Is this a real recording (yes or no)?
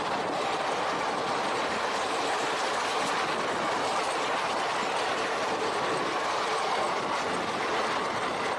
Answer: yes